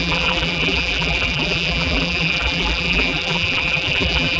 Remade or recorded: remade